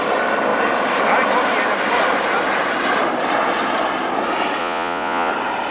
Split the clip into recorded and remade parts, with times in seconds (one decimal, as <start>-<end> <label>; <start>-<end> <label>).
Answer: 0.0-4.6 recorded; 4.6-5.3 remade; 5.3-5.7 recorded